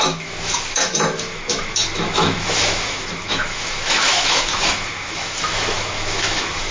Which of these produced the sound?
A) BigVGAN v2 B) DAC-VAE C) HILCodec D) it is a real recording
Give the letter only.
B